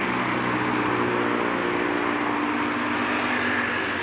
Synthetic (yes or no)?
no